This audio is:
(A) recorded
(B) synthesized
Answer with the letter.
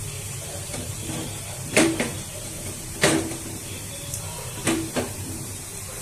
B